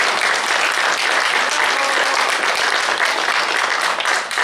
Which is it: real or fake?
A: real